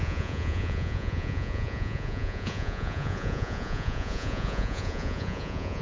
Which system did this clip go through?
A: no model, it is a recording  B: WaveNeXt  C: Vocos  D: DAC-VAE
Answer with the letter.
C